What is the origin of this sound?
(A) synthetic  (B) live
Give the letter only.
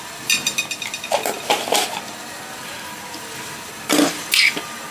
B